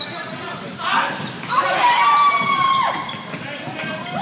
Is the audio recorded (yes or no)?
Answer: yes